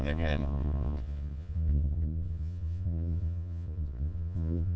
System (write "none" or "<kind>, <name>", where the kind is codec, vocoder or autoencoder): vocoder, Vocos